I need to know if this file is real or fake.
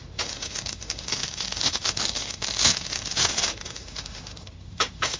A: fake